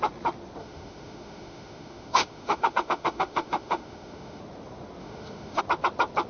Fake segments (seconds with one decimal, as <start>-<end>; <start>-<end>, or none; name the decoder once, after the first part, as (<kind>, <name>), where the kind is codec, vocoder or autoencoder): 0.6-4.4 (autoencoder, DAC-VAE); 5.0-5.6